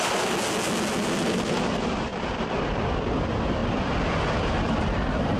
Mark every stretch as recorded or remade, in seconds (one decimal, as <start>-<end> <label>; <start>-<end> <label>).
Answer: 0.0-5.4 recorded